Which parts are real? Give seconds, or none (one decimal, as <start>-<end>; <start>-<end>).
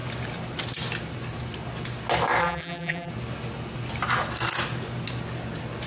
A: 0.0-2.4; 3.1-5.9